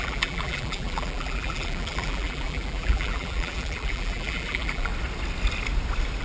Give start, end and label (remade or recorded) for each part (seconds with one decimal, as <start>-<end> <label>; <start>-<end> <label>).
0.0-4.9 remade; 4.9-6.2 recorded